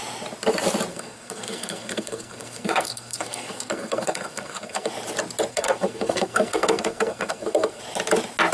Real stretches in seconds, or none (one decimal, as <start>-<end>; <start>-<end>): 0.0-0.9; 4.9-5.5; 7.8-8.5